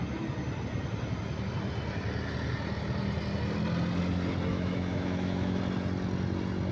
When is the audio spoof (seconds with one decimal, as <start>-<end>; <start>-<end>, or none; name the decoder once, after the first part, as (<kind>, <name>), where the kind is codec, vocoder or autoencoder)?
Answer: 4.5-5.6 (autoencoder, DAC-VAE)